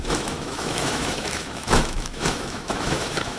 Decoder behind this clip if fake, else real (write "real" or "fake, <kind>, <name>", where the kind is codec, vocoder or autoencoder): fake, autoencoder, DAC-VAE